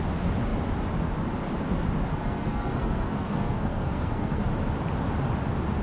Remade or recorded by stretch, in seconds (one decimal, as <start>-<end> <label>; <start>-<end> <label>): 0.0-2.1 recorded; 2.1-4.4 remade; 4.4-5.8 recorded